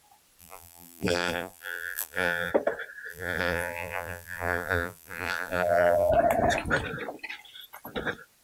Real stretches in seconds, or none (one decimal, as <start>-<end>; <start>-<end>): 0.0-0.4; 2.5-3.1; 6.1-8.4